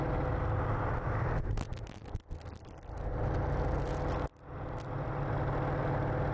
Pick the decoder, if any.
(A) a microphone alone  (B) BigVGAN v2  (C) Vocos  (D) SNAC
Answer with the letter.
A